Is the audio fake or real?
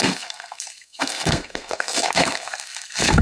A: fake